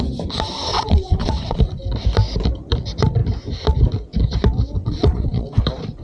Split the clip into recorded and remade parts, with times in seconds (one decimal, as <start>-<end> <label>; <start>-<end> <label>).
0.0-0.7 recorded; 0.7-1.6 remade; 1.6-4.8 recorded; 4.8-5.6 remade; 5.6-6.0 recorded